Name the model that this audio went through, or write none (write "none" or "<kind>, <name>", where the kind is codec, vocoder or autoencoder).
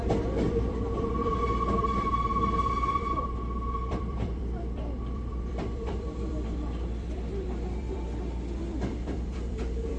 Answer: vocoder, BigVGAN v2